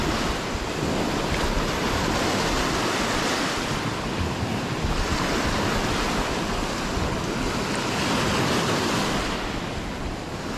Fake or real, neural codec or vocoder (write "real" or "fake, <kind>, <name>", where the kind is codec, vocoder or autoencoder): real